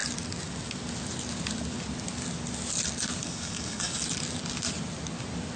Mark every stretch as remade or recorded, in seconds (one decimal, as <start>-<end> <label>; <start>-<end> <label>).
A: 0.0-3.2 recorded; 3.2-4.0 remade; 4.0-5.6 recorded